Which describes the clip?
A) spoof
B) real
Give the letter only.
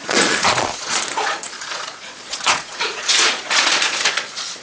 A